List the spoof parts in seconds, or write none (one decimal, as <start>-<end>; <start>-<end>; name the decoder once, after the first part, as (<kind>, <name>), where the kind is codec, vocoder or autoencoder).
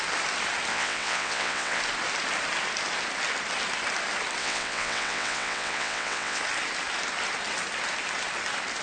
0.7-1.8 (vocoder, WaveNeXt); 4.4-6.4